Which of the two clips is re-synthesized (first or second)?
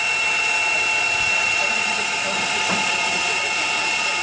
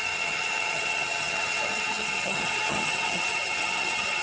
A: second